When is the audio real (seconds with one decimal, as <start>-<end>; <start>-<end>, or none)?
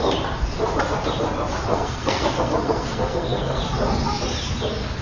0.0-1.7; 3.6-5.0